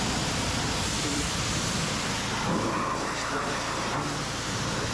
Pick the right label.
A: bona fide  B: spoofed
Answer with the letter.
A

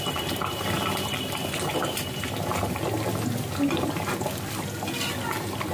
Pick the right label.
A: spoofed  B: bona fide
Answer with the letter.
B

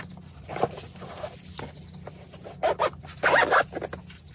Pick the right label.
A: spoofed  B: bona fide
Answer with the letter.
B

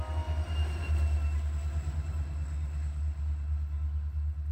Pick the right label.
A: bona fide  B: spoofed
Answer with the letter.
A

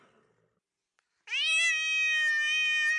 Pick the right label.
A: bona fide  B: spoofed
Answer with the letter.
A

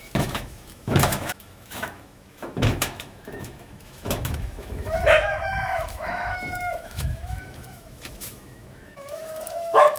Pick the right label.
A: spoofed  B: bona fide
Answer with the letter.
A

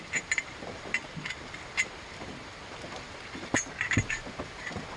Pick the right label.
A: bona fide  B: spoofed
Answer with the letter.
B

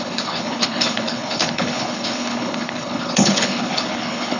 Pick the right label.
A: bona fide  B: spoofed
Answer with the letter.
B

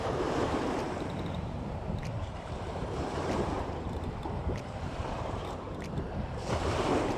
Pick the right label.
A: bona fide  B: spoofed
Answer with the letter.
B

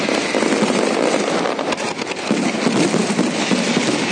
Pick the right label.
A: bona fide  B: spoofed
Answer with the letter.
A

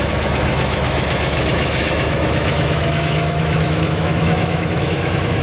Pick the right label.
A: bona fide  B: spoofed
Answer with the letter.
B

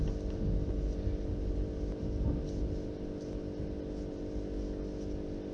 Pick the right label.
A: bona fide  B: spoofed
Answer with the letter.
A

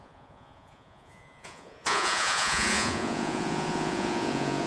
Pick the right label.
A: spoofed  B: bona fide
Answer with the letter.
A